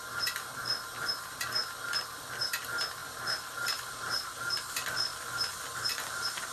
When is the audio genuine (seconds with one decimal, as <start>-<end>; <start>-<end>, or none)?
0.0-5.1; 5.8-6.5